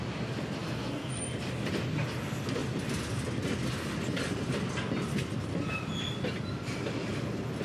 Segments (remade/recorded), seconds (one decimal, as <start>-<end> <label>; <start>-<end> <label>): 0.0-0.6 recorded; 0.6-1.1 remade; 1.1-7.6 recorded